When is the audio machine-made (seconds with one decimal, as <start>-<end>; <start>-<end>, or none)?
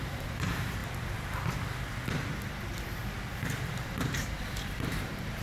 0.0-0.8; 3.7-5.4